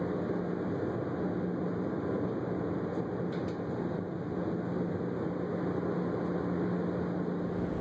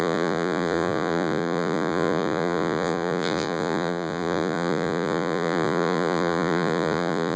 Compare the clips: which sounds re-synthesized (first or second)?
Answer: second